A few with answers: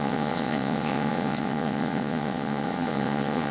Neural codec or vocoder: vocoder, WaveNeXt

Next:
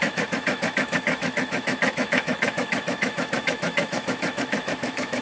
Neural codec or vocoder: autoencoder, DAC-VAE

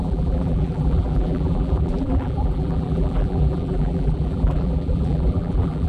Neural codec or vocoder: vocoder, BigVGAN v2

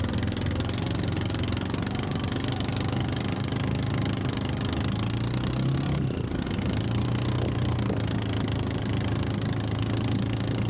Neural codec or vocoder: none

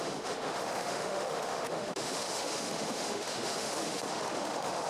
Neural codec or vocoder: autoencoder, DAC-VAE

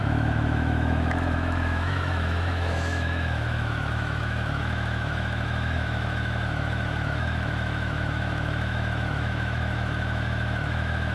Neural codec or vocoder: autoencoder, DAC-VAE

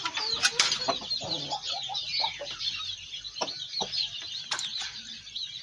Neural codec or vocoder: none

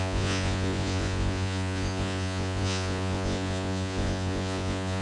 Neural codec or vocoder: vocoder, Vocos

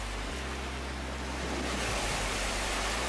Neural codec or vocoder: none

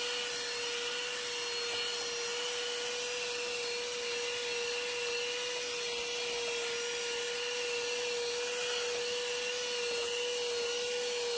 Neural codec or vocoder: none